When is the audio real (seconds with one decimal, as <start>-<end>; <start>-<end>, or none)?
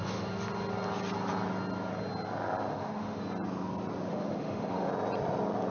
0.0-2.7; 3.2-4.1; 4.9-5.7